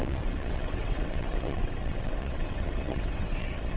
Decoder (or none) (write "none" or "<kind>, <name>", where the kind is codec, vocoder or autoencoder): vocoder, WaveNeXt